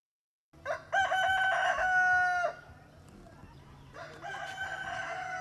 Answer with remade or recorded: recorded